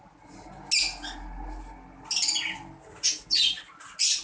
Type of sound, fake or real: real